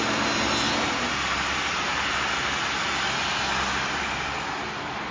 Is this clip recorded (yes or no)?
yes